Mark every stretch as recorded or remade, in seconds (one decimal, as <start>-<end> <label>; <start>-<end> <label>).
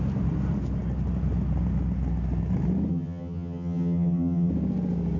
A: 0.0-2.9 recorded; 2.9-4.5 remade; 4.5-5.2 recorded